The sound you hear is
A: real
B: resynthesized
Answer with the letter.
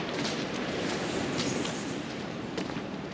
B